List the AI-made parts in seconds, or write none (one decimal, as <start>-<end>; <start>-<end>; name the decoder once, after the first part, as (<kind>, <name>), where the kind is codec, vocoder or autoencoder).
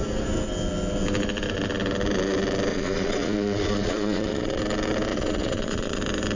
2.7-4.6 (vocoder, Vocos); 5.1-6.0